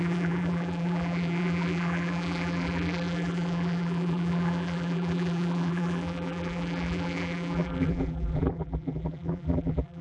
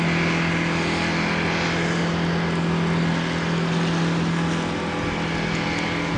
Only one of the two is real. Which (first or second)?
second